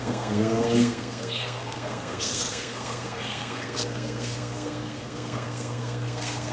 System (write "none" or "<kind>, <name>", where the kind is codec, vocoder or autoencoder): codec, SNAC